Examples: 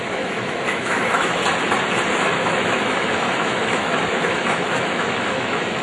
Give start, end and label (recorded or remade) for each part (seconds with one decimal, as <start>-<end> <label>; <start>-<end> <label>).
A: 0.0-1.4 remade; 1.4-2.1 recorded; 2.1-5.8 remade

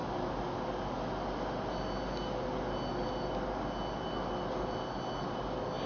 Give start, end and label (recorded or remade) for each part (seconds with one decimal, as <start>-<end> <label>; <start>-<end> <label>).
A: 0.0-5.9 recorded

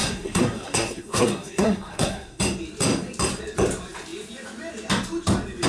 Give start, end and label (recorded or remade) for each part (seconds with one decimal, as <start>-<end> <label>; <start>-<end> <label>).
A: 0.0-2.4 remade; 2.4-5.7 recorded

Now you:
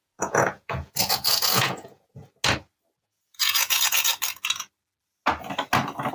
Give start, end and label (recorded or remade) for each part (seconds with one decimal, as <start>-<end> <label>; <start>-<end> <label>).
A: 0.0-2.2 remade; 2.2-3.0 recorded; 3.0-4.1 remade; 4.1-6.1 recorded